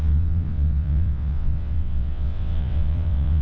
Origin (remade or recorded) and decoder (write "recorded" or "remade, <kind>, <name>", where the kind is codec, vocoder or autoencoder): remade, vocoder, WaveNeXt